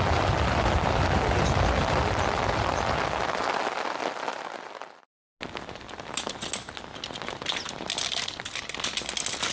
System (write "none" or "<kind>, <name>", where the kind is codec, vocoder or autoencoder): none